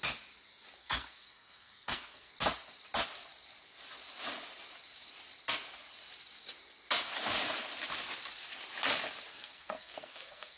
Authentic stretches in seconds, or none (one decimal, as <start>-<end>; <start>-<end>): 0.0-0.8; 2.3-9.3